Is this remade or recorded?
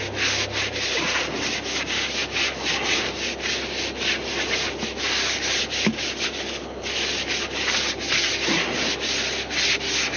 recorded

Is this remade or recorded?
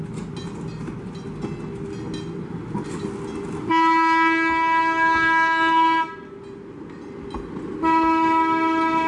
recorded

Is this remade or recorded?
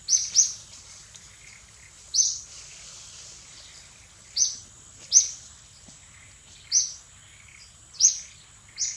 recorded